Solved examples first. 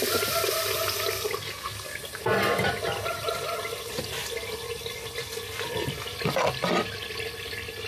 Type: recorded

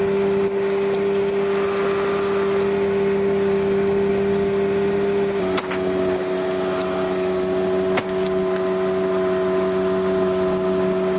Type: recorded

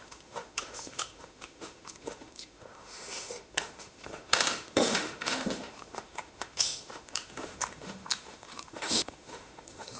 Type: remade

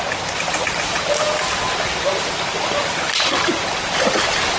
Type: recorded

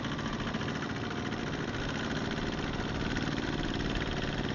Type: recorded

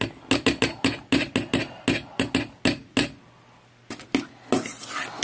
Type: recorded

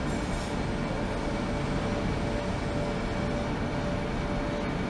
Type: recorded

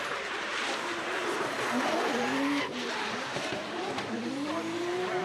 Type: remade